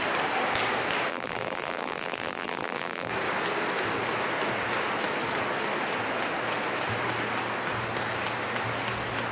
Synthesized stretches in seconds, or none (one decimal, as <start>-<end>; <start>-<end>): 1.1-3.1